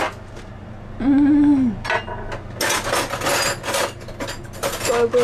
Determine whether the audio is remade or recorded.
recorded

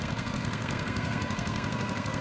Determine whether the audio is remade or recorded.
remade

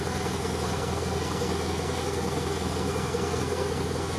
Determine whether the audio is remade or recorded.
remade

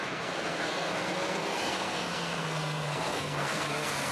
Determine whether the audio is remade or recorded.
remade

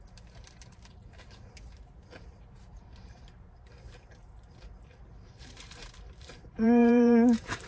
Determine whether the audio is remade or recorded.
remade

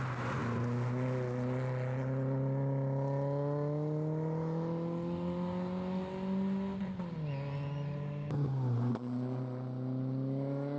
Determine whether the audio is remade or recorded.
recorded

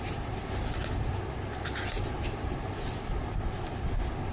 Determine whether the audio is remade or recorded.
recorded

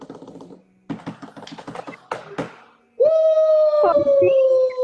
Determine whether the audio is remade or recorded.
recorded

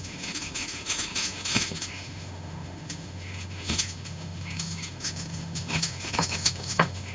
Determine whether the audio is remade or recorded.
remade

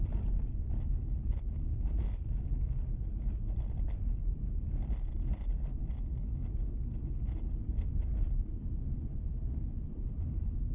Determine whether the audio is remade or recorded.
recorded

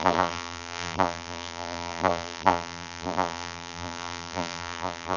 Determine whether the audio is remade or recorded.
remade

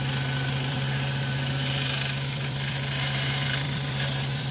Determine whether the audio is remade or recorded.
remade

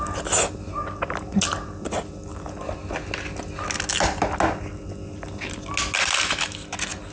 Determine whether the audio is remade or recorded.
recorded